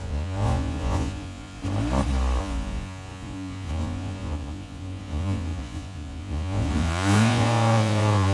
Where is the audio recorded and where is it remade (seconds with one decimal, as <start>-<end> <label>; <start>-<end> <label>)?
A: 0.0-1.6 remade; 1.6-2.4 recorded; 2.4-8.3 remade